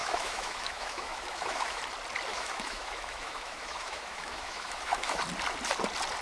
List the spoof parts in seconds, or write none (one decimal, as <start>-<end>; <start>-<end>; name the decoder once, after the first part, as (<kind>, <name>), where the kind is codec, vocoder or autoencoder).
0.0-1.8 (autoencoder, DAC-VAE); 2.3-5.2